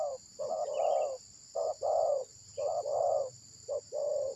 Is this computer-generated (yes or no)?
no